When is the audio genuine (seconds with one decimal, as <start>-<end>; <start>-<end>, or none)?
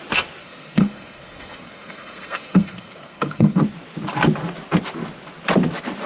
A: 0.0-0.4; 3.6-6.1